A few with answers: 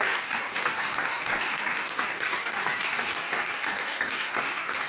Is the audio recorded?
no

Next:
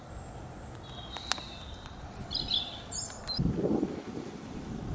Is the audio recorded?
yes